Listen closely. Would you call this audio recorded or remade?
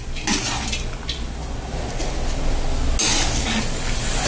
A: recorded